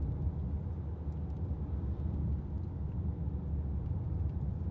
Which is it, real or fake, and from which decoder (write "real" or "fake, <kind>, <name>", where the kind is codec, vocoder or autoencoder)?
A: real